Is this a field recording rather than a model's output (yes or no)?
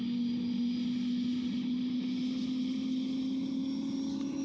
yes